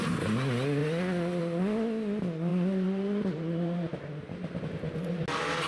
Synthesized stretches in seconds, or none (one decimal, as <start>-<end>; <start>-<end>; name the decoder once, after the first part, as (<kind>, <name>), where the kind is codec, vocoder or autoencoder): 2.5-4.6 (vocoder, BigVGAN v2)

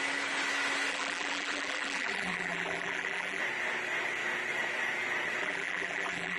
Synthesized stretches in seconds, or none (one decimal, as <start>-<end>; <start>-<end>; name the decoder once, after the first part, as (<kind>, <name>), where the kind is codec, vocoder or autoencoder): 0.9-3.4 (vocoder, BigVGAN v2); 5.4-6.4